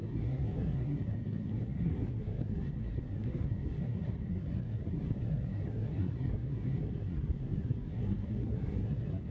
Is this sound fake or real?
fake